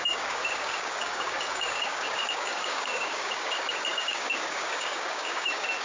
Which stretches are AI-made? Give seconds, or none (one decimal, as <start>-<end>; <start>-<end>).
0.0-5.8